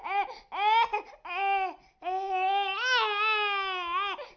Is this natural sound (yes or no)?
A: yes